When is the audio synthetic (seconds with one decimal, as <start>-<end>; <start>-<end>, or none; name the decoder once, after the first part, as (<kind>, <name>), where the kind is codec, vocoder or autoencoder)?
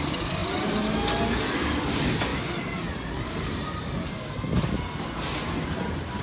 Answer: none